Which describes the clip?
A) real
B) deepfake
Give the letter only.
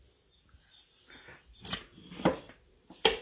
A